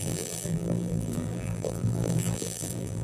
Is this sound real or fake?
fake